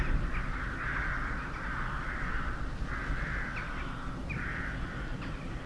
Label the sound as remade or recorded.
recorded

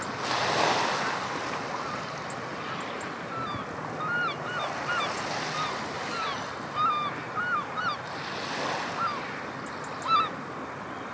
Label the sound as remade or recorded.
recorded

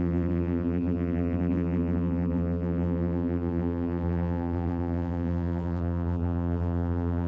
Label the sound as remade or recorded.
remade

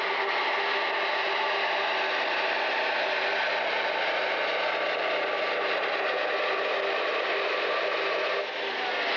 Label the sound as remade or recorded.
recorded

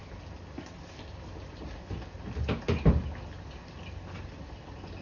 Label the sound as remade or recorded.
recorded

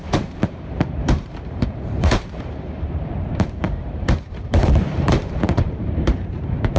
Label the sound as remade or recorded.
remade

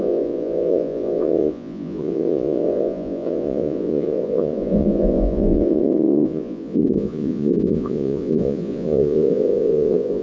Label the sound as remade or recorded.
remade